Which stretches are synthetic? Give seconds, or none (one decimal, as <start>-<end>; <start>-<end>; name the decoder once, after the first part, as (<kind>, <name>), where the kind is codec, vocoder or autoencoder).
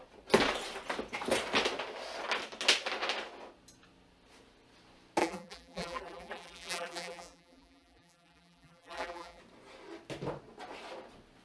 5.2-9.4 (vocoder, BigVGAN v2)